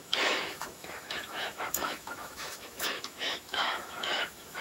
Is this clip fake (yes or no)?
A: yes